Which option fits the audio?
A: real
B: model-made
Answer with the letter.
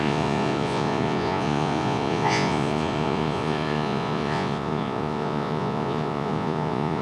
B